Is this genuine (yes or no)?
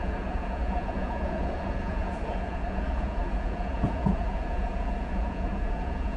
no